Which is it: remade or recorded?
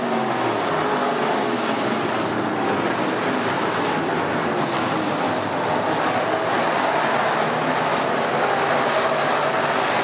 recorded